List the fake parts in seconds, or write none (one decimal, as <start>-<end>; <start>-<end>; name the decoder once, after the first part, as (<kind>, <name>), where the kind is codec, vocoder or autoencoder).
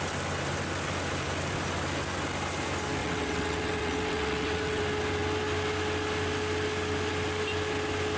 3.0-4.8 (vocoder, WaveNeXt)